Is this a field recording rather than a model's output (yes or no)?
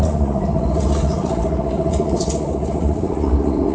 no